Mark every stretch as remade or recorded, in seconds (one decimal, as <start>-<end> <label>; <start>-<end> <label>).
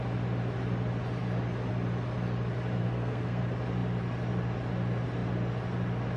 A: 0.0-2.8 recorded; 2.8-3.4 remade; 3.4-6.2 recorded